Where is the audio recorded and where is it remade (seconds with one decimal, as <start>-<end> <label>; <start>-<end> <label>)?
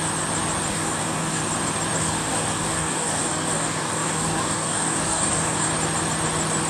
0.0-0.7 recorded; 0.7-1.4 remade; 1.4-2.0 recorded; 2.0-5.7 remade; 5.7-6.7 recorded